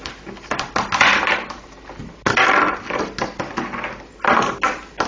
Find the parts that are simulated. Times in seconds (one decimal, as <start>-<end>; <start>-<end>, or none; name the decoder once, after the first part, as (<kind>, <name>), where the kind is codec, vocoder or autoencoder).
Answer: none